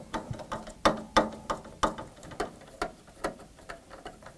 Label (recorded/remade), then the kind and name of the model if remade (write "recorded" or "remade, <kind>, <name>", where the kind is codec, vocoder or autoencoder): recorded